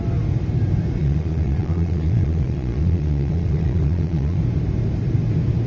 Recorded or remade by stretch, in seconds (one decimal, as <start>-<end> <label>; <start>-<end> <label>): 0.0-1.0 recorded; 1.0-4.4 remade; 4.4-5.7 recorded